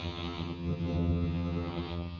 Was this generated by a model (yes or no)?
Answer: yes